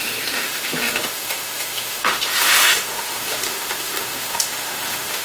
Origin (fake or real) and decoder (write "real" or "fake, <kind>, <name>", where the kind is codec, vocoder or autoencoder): fake, autoencoder, DAC-VAE